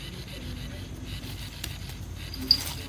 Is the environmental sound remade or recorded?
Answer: recorded